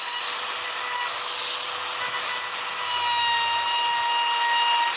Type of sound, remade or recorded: recorded